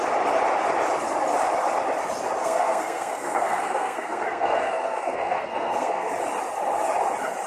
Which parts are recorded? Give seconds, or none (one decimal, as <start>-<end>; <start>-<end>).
0.0-2.4; 6.1-7.5